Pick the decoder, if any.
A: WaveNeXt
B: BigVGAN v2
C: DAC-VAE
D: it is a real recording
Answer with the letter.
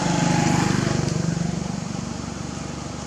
D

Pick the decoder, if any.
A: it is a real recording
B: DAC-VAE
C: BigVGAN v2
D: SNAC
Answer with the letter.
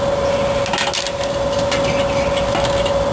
A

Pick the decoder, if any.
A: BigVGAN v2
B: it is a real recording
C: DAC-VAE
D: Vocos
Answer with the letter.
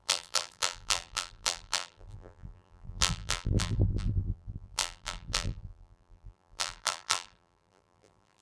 A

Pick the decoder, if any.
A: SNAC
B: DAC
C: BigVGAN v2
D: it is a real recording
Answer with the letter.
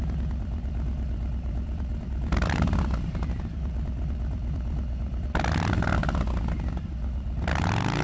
C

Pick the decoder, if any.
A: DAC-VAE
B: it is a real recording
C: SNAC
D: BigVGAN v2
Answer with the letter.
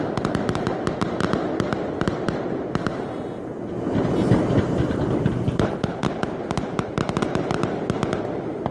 B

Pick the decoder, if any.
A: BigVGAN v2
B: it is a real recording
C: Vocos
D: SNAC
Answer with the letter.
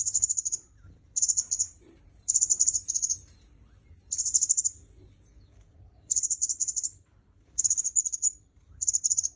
A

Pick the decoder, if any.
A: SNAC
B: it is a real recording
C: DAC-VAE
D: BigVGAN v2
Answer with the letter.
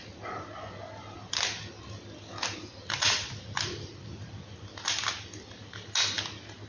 B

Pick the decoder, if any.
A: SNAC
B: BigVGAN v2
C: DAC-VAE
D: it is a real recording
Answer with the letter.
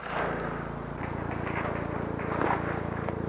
D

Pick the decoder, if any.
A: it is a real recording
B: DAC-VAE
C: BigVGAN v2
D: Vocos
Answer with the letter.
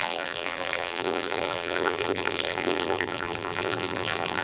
C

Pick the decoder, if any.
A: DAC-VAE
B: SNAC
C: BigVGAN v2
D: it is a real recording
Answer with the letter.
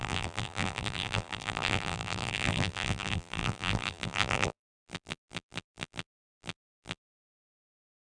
C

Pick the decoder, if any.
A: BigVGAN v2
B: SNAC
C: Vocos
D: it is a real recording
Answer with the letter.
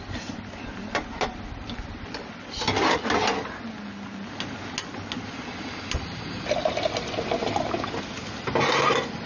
D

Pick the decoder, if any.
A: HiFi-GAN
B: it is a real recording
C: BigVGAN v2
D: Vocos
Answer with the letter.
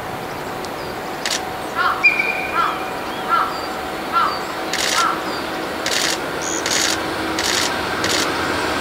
B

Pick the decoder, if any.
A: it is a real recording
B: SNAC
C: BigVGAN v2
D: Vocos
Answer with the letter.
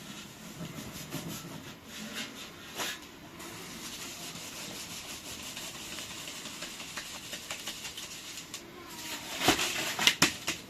A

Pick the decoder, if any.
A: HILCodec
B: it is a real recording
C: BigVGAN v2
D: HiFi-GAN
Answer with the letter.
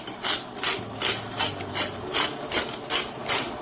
C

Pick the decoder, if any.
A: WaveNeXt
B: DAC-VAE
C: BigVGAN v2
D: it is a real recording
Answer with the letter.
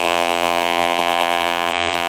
C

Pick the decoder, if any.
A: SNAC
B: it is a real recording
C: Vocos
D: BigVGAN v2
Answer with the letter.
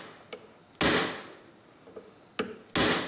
B